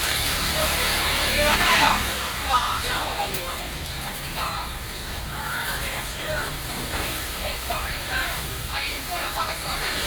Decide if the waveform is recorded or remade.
remade